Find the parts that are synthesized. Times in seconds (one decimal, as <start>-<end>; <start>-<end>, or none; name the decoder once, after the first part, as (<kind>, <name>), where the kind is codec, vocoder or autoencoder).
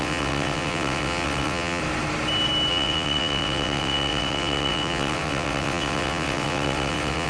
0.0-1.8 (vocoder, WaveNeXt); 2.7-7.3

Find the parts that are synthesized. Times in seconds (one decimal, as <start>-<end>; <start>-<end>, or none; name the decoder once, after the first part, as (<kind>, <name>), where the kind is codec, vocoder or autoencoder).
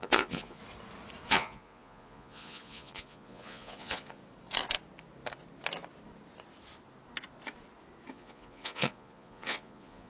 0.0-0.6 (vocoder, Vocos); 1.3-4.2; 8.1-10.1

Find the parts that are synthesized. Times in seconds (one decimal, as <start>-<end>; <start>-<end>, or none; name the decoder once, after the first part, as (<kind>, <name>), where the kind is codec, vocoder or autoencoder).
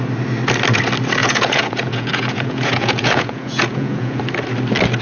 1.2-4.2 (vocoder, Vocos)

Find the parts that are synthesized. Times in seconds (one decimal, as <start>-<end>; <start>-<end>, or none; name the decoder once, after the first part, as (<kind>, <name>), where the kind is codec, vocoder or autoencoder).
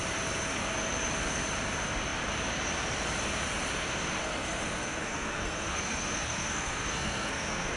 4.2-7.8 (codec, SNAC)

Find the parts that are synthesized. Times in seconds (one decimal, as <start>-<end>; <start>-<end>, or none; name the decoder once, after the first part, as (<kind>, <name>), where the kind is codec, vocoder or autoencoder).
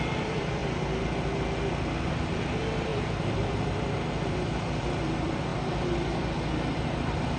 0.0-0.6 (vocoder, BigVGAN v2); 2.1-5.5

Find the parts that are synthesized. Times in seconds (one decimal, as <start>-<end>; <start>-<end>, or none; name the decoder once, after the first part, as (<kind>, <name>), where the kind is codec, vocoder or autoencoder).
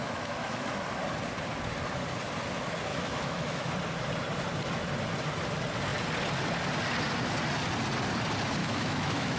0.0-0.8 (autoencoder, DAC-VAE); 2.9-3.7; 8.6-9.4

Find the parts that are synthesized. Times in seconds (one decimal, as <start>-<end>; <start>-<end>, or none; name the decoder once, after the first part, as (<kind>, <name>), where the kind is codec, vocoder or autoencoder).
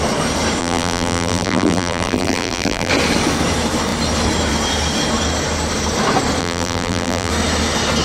0.6-2.9 (vocoder, BigVGAN v2); 6.4-7.3